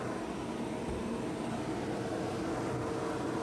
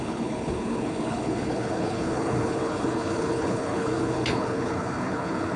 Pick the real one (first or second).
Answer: first